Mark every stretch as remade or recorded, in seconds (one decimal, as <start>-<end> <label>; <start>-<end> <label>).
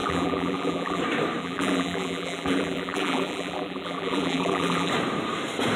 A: 0.0-1.0 remade; 1.0-1.4 recorded; 1.4-4.9 remade; 4.9-5.8 recorded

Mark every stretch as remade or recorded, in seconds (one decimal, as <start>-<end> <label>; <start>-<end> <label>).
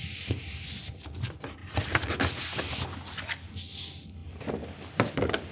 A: 0.0-5.5 recorded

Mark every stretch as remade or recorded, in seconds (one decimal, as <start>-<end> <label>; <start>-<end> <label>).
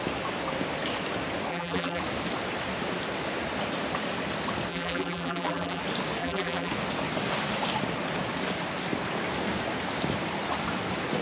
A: 0.0-1.5 recorded; 1.5-2.0 remade; 2.0-4.7 recorded; 4.7-5.8 remade; 5.8-6.2 recorded; 6.2-6.7 remade; 6.7-11.2 recorded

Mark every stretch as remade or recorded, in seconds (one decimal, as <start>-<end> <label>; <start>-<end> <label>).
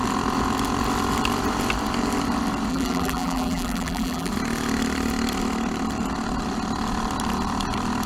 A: 0.0-2.7 recorded; 2.7-4.3 remade; 4.3-8.1 recorded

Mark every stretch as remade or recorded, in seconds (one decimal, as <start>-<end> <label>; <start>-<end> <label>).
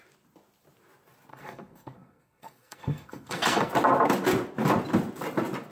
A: 0.0-1.3 recorded; 1.3-3.7 remade; 3.7-5.7 recorded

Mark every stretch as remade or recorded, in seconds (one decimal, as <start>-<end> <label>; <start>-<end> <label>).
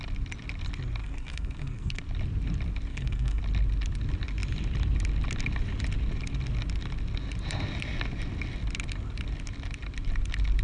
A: 0.0-1.0 recorded; 1.0-2.0 remade; 2.0-2.9 recorded; 2.9-3.4 remade; 3.4-10.6 recorded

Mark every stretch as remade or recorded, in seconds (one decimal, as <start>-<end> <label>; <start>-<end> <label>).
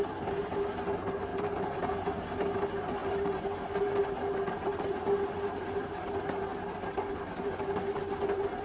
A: 0.0-8.6 recorded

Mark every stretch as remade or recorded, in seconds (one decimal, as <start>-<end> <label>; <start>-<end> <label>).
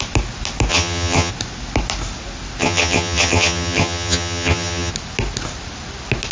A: 0.0-0.7 recorded; 0.7-1.3 remade; 1.3-2.6 recorded; 2.6-4.9 remade; 4.9-6.3 recorded